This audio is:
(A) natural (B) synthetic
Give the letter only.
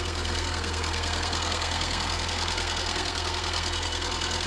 B